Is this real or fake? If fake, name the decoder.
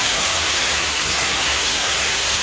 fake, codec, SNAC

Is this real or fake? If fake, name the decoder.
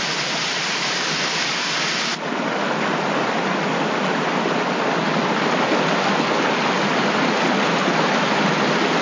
real